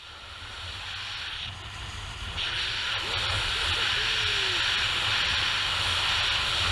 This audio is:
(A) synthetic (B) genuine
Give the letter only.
B